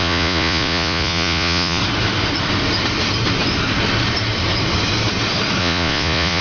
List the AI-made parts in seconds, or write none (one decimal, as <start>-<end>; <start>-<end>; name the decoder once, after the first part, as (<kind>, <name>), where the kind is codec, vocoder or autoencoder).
0.0-1.8 (vocoder, Vocos); 5.6-6.4

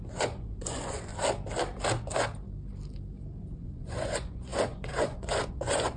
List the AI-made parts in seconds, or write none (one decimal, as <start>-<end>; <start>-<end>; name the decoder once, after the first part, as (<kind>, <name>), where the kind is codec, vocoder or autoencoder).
0.0-1.1 (vocoder, Vocos); 3.4-6.0